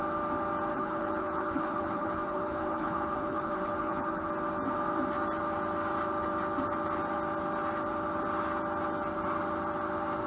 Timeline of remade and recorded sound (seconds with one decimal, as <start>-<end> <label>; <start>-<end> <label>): 0.0-0.7 recorded; 0.7-4.3 remade; 4.3-10.3 recorded